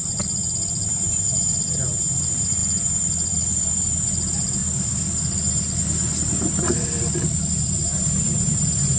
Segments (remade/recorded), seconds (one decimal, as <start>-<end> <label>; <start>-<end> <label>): 0.0-9.0 recorded

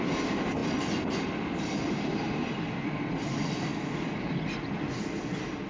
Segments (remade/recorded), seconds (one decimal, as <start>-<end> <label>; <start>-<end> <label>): 0.0-5.7 recorded